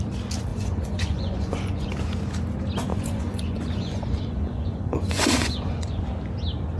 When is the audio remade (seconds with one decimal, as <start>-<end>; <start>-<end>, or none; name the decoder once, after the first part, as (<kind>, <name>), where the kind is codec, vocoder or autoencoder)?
0.5-1.9 (vocoder, Vocos); 2.9-6.0